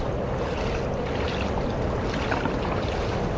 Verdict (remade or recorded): recorded